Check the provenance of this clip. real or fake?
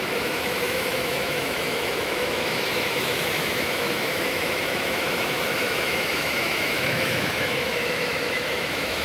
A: fake